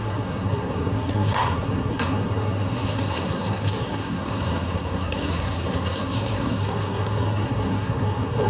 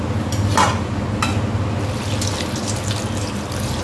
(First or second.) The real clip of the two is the second